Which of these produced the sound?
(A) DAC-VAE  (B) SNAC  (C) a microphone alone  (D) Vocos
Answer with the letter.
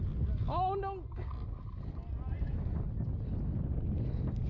C